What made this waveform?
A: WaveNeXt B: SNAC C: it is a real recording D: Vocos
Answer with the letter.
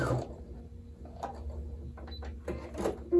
C